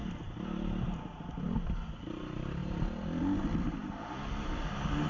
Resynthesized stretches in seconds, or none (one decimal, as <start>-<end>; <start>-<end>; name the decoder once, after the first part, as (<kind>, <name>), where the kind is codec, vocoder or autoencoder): none